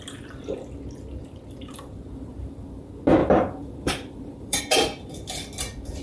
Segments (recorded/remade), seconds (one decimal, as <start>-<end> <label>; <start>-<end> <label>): 0.0-1.2 recorded; 1.2-2.8 remade; 2.8-3.2 recorded; 3.2-4.6 remade; 4.6-6.0 recorded